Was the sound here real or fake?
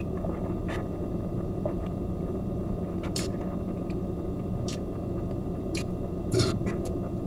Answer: fake